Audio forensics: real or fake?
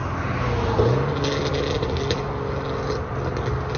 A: real